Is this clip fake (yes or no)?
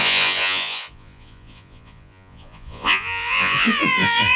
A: yes